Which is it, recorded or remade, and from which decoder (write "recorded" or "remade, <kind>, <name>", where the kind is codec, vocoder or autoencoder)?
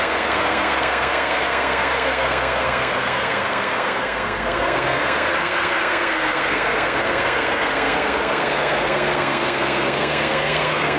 remade, codec, SNAC